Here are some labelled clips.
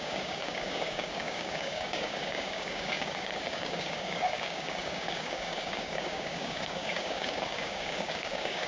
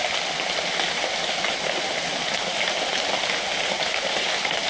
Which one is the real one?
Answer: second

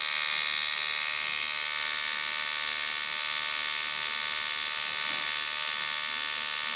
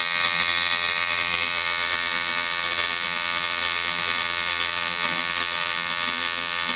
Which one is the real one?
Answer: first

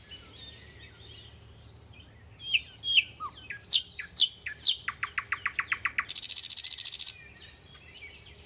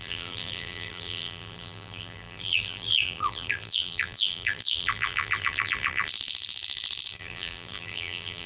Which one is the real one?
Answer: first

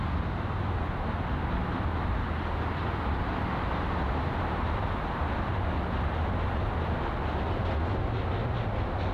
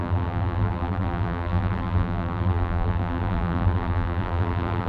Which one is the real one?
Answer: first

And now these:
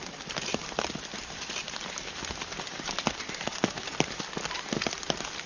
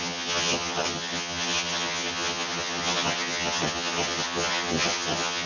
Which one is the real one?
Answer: first